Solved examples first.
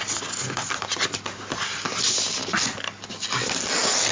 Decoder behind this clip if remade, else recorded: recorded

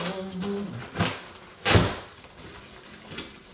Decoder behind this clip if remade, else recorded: recorded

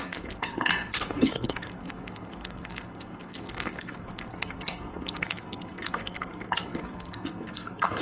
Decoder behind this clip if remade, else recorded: remade, codec, SNAC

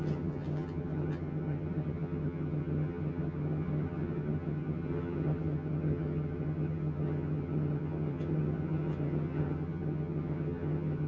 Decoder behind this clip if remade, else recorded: remade, vocoder, HiFi-GAN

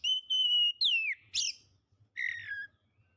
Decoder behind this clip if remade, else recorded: recorded